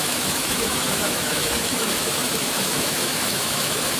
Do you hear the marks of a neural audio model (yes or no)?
yes